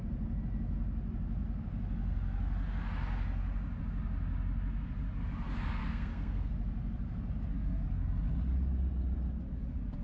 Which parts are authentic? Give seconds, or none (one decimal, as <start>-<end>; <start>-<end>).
0.0-5.8; 6.5-10.0